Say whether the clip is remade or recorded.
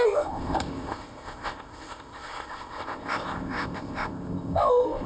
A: remade